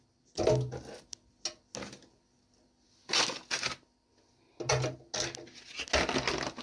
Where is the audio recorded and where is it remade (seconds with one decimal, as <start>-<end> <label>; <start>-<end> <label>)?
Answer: 0.0-6.6 recorded